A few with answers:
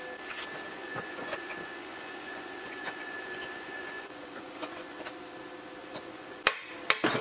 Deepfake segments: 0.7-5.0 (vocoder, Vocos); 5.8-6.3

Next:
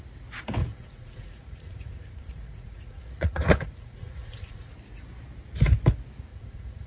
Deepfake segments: 0.6-4.7 (vocoder, Vocos); 6.3-6.9

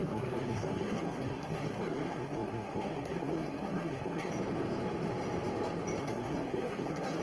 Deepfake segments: 0.0-4.3 (codec, SNAC); 6.0-7.2

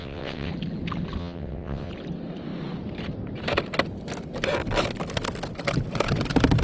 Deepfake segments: 0.0-0.5 (vocoder, WaveNeXt); 1.2-1.9

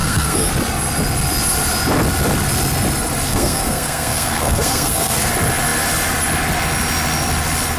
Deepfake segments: 0.0-0.5 (codec, SNAC); 3.3-5.3

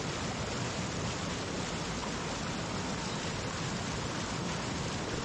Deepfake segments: none

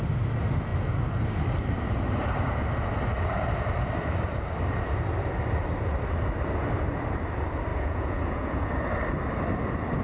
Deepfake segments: 7.7-8.7 (vocoder, Vocos)